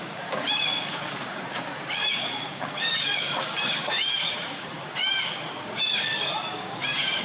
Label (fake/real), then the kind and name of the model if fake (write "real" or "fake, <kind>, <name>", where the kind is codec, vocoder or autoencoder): fake, codec, DAC